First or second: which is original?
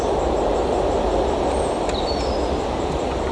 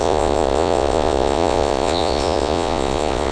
first